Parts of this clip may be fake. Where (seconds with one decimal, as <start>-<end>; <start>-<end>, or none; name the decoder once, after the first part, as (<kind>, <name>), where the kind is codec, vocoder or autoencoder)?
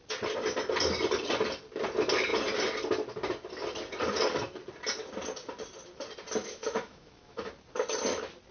6.4-7.5 (autoencoder, DAC-VAE)